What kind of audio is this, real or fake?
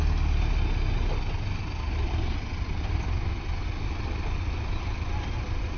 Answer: real